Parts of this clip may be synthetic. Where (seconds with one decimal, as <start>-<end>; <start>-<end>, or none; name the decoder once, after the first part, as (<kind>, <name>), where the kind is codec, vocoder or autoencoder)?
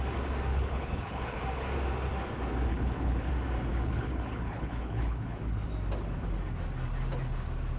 0.5-1.4 (codec, HILCodec); 2.7-3.3; 3.7-5.7